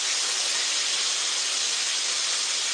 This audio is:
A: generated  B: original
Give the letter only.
B